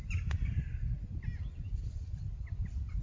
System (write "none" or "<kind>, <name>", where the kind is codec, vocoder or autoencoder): none